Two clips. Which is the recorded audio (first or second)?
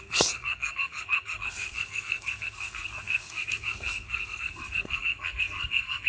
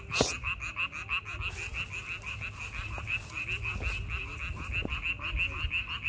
second